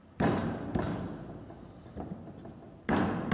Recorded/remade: recorded